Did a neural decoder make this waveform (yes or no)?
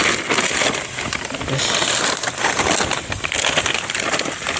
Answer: no